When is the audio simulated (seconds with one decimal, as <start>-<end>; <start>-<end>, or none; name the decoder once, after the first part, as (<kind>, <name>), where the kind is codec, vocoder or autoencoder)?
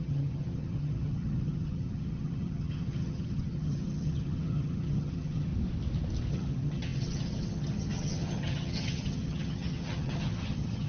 0.0-5.5 (vocoder, HiFi-GAN); 6.3-10.9